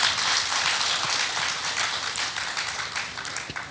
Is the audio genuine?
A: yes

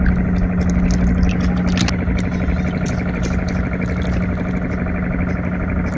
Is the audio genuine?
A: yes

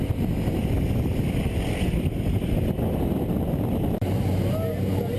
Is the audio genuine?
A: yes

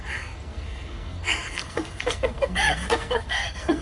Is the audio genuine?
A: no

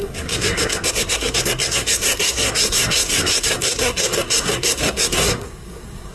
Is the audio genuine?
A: no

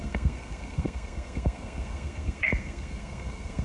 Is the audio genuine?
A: no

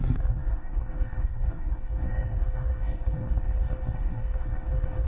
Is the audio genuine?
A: no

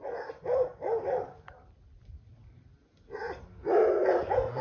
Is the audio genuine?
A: yes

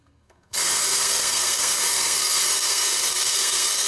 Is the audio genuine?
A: no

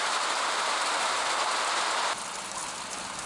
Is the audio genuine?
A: yes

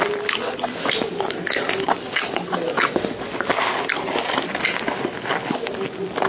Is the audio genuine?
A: yes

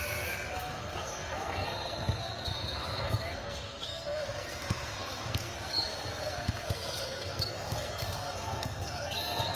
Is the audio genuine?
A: no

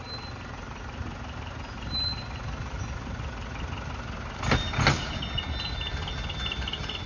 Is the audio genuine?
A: yes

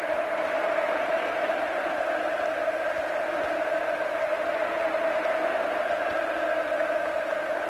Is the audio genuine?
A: yes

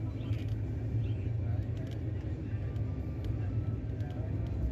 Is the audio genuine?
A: yes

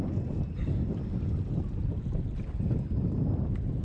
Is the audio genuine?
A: yes